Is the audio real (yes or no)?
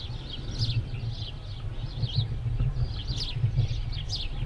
yes